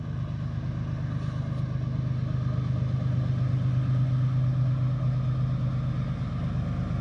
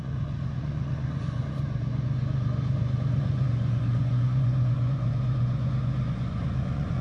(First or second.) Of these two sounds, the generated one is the second